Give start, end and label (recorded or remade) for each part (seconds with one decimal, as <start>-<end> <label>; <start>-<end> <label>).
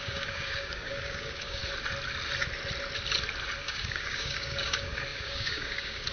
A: 0.0-1.6 remade; 1.6-3.6 recorded; 3.6-6.1 remade